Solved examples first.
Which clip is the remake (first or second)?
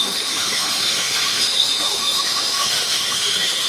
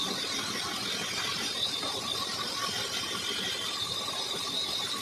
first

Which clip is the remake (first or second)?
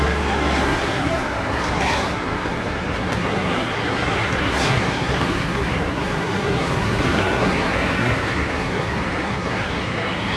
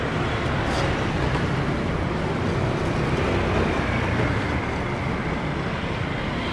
first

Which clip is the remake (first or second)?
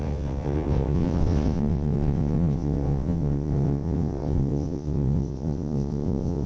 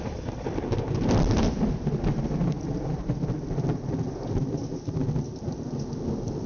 first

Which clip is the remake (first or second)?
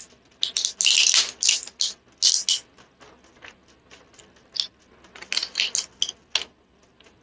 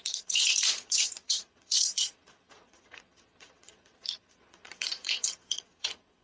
second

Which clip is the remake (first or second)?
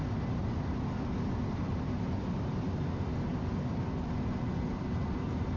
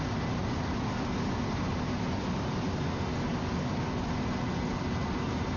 first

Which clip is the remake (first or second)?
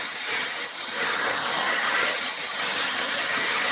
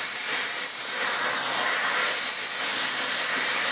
first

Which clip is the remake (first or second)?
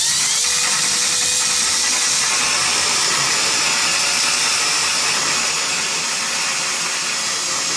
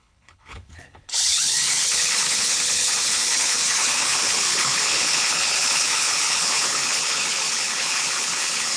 second